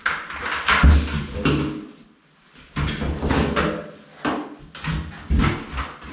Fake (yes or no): no